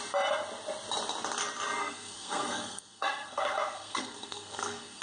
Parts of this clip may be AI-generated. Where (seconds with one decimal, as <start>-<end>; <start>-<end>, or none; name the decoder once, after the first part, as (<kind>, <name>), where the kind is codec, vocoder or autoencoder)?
1.8-5.0 (codec, SNAC)